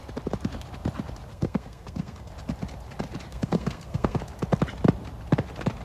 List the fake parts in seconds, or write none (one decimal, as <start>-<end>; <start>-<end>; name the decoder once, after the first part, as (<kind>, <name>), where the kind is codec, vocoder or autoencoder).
1.3-2.3 (codec, SNAC); 3.3-4.2